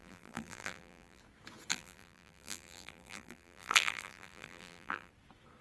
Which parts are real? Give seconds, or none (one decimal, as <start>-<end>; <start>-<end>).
1.2-1.7; 5.1-5.6